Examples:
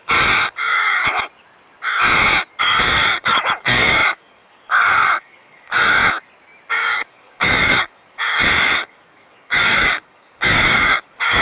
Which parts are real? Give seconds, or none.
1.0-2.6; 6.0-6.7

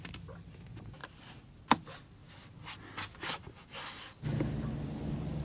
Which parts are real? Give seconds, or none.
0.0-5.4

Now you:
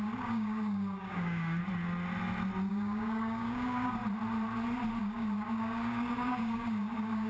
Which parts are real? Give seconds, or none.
1.6-2.7; 4.0-5.0